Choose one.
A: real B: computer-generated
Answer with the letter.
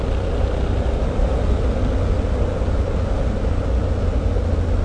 A